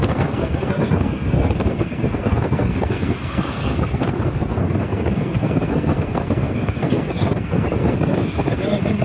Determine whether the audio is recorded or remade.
remade